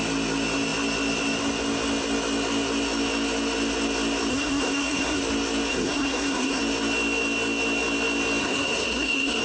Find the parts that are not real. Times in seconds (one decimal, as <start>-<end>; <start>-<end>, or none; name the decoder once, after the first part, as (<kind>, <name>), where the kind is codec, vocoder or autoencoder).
4.3-5.2 (codec, SNAC); 5.7-6.6; 8.4-9.4

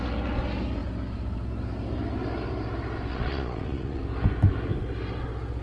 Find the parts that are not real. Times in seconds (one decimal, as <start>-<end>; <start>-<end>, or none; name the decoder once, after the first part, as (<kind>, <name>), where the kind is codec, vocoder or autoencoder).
3.1-4.0 (vocoder, Vocos)

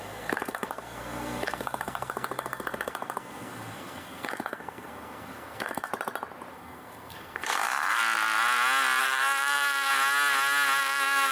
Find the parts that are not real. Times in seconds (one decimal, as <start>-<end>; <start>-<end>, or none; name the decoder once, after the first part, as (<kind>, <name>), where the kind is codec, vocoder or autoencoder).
0.0-5.9 (codec, SNAC); 6.5-8.0; 9.0-9.9; 10.8-11.3

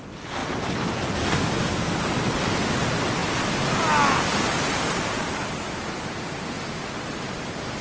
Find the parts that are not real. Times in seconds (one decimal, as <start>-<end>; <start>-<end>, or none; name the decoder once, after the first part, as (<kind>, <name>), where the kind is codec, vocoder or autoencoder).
none

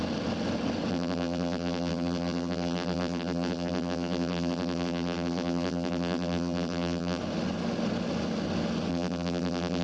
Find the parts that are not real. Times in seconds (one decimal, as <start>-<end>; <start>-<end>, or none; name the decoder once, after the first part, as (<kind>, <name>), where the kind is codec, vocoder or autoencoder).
0.9-7.2 (vocoder, BigVGAN v2); 8.9-9.8

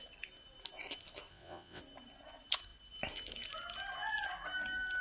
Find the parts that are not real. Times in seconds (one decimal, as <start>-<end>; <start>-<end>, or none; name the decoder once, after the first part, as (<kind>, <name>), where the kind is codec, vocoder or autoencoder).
1.3-1.8 (vocoder, WaveNeXt)